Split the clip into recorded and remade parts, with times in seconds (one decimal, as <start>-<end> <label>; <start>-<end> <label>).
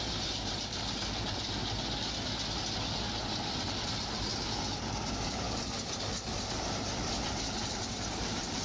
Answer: 0.0-1.6 remade; 1.6-3.5 recorded; 3.5-4.3 remade; 4.3-5.2 recorded; 5.2-8.6 remade